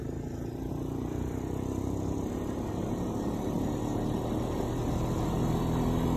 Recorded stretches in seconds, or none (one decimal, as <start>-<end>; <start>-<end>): 0.0-6.2